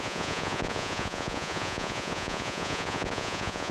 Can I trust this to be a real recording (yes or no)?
no